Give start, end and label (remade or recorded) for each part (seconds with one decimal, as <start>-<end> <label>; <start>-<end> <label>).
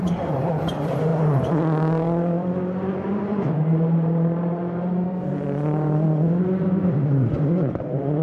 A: 0.0-8.2 remade